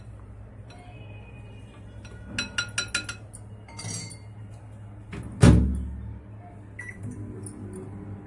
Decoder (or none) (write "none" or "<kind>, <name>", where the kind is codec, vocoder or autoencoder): none